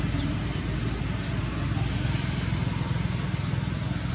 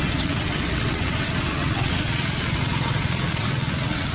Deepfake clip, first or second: second